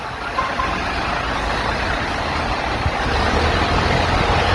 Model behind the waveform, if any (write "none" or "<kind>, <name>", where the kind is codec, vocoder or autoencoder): none